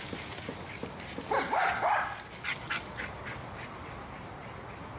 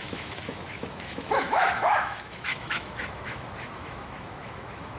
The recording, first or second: first